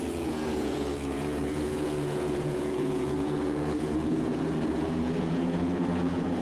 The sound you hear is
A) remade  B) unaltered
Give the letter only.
A